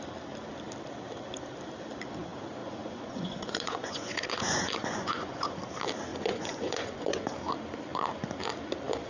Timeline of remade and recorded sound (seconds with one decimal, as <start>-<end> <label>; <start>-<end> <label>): 0.0-2.6 recorded; 2.6-5.6 remade; 5.6-6.1 recorded; 6.1-7.3 remade; 7.3-9.1 recorded

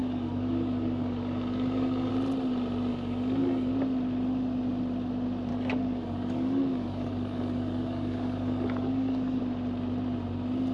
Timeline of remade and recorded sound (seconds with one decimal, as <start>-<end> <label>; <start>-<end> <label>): 0.0-2.1 remade; 2.1-2.9 recorded; 2.9-3.7 remade; 3.7-5.5 recorded; 5.5-9.4 remade; 9.4-10.7 recorded

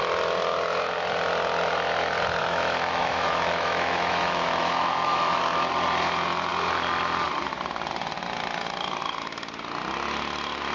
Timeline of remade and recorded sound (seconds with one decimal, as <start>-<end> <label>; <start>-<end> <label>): 0.0-2.4 recorded; 2.4-5.4 remade; 5.4-10.7 recorded

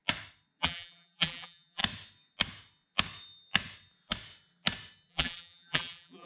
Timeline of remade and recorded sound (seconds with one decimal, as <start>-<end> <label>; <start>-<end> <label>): 0.0-0.6 recorded; 0.6-1.8 remade; 1.8-5.1 recorded; 5.1-6.3 remade

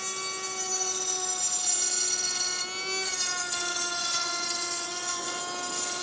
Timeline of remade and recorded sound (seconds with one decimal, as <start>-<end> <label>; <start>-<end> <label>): 0.0-4.0 recorded; 4.0-5.4 remade; 5.4-6.0 recorded

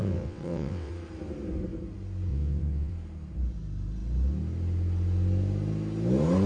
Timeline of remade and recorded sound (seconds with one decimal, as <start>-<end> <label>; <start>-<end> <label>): 0.0-0.9 remade; 0.9-2.3 recorded; 2.3-2.9 remade; 2.9-6.5 recorded

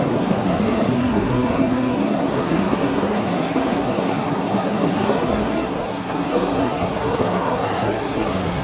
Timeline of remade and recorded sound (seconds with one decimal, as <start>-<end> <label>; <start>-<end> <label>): 0.0-8.6 remade

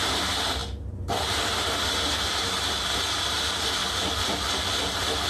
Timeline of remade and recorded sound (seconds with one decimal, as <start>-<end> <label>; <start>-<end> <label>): 0.0-3.8 remade; 3.8-5.3 recorded